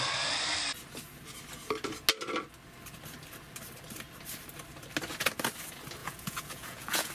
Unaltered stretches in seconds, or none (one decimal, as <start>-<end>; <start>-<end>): 0.0-6.0